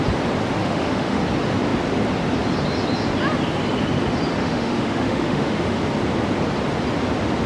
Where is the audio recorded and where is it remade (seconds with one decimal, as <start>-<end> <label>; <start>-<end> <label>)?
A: 0.0-0.6 recorded; 0.6-1.2 remade; 1.2-4.4 recorded; 4.4-5.8 remade; 5.8-7.5 recorded